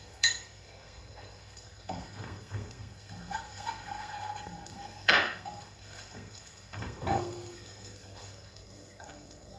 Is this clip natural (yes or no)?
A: no